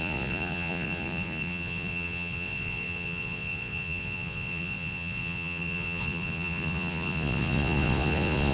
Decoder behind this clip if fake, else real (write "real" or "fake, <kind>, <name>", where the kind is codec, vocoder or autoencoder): fake, vocoder, Vocos